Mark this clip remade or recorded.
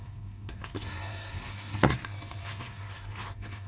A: remade